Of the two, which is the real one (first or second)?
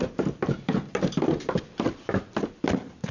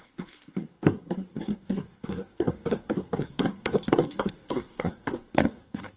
first